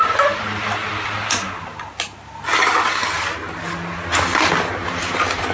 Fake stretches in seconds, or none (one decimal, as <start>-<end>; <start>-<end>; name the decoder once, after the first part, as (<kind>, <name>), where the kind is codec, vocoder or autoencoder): none